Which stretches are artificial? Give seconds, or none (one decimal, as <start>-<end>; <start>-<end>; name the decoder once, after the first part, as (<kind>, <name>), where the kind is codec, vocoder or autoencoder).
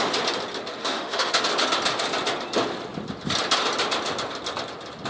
0.8-1.4 (autoencoder, DAC-VAE)